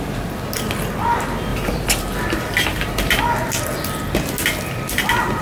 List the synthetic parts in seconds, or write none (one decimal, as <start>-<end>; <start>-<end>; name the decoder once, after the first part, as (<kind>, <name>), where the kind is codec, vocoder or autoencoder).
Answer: 1.5-2.0 (vocoder, BigVGAN v2); 2.7-3.2